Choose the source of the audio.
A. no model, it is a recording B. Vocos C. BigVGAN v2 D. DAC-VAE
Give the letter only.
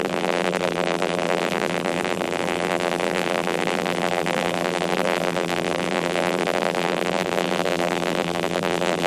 C